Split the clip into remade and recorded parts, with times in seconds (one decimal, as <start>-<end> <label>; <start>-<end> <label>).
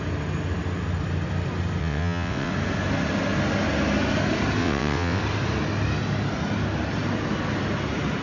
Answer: 0.0-1.8 recorded; 1.8-2.5 remade; 2.5-4.6 recorded; 4.6-5.2 remade; 5.2-8.2 recorded